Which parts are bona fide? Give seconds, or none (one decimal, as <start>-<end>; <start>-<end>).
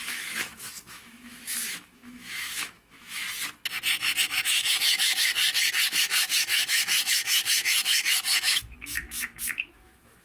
3.2-4.2; 5.3-6.0